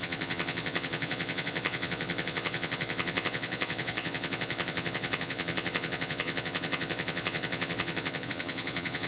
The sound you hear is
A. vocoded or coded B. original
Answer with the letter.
A